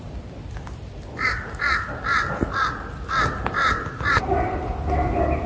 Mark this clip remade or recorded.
recorded